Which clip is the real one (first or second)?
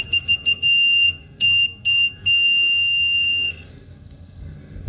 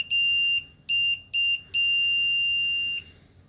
second